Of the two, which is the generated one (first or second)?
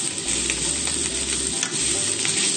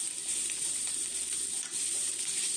second